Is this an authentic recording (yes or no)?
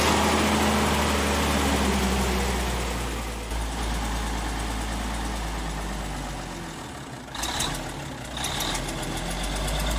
yes